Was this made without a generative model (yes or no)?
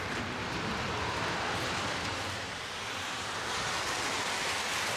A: no